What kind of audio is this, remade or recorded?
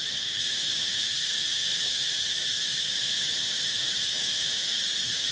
remade